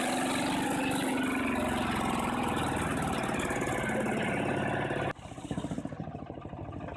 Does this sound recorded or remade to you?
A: recorded